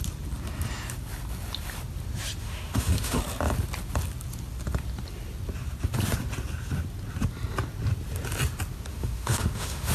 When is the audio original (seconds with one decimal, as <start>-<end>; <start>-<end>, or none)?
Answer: 0.0-2.4; 3.2-8.9